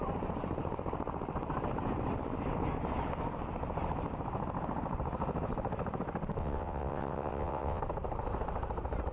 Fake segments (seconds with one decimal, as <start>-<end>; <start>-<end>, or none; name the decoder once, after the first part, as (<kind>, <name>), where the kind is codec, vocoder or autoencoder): 6.4-7.8 (vocoder, WaveNeXt)